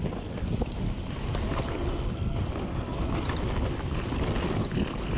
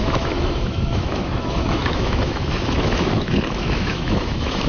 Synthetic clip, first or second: second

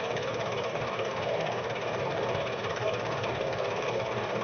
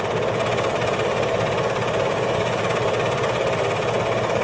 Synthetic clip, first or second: first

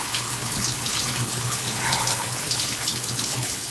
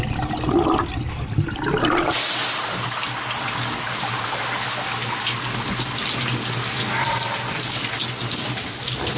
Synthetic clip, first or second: first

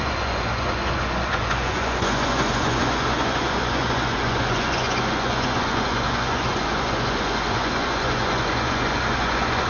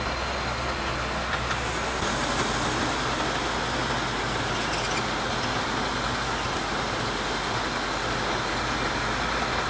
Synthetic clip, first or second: first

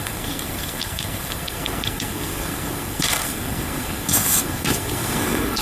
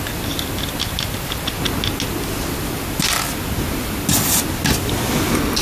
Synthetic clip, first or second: first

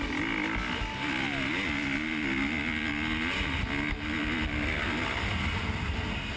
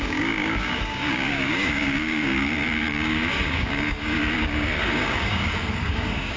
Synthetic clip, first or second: second